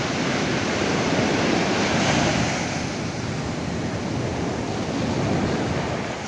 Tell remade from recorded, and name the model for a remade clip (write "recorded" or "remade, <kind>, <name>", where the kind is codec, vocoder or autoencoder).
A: recorded